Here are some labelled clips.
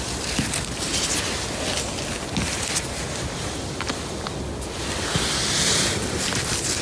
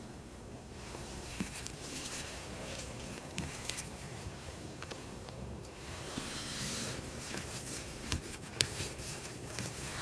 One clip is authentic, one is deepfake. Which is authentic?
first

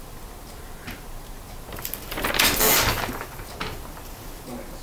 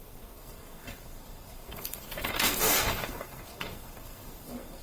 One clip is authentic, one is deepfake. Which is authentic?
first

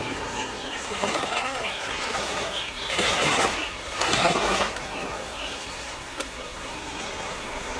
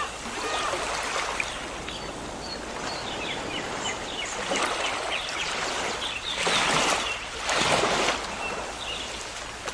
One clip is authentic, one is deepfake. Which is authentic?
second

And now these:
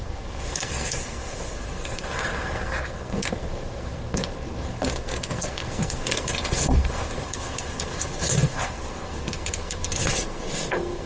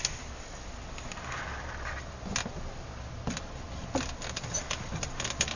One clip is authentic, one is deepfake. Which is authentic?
second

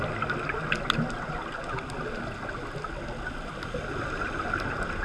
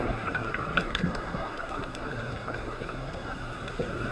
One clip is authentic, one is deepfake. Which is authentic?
first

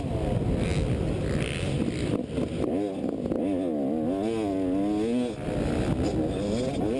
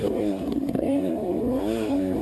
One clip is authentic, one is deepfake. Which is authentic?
first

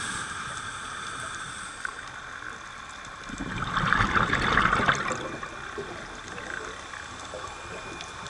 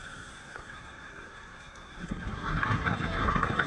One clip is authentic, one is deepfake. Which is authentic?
first